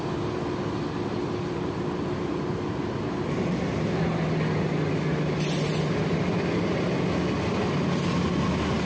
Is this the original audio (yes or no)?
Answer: yes